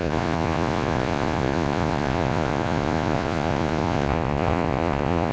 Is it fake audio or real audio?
fake